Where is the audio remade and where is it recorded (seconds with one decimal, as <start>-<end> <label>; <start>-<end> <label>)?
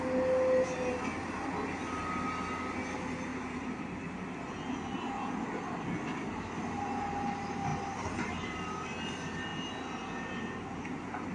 0.0-3.3 recorded; 3.3-4.0 remade; 4.0-7.7 recorded; 7.7-8.6 remade; 8.6-11.3 recorded